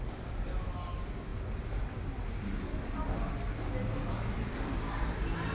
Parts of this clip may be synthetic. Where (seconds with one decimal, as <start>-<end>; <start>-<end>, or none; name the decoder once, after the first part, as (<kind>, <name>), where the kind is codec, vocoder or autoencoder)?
none